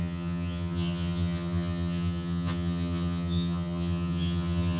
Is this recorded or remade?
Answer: remade